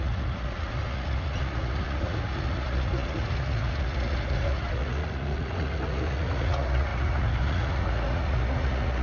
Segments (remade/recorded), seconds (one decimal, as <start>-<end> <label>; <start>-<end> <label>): 0.0-9.0 remade